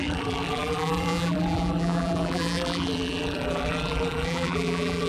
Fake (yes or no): yes